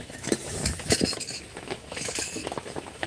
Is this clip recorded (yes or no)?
no